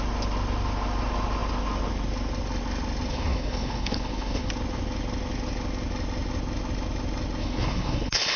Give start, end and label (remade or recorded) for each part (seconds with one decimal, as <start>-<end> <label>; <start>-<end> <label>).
0.0-3.1 recorded; 3.1-4.5 remade; 4.5-7.4 recorded; 7.4-8.4 remade